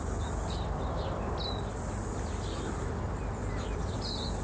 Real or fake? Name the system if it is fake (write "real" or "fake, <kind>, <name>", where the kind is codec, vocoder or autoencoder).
real